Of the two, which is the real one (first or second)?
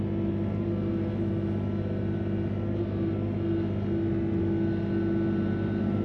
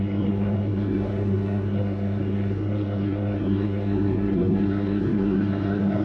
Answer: first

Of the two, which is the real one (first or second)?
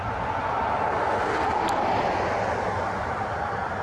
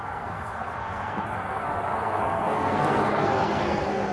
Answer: first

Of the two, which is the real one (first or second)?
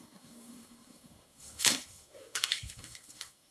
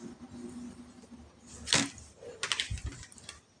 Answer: second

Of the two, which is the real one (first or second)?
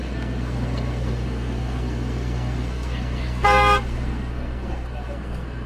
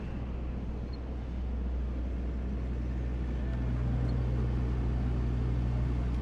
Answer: second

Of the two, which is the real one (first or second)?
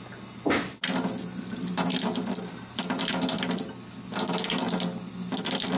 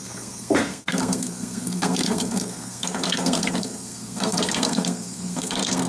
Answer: first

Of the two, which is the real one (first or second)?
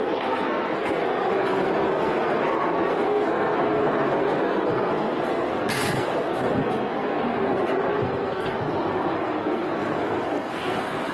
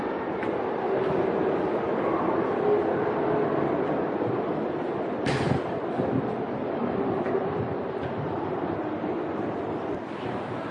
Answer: second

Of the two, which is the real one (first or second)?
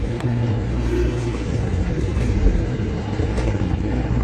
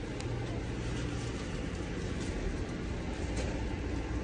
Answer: second